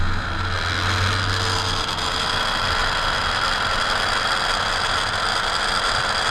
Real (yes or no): yes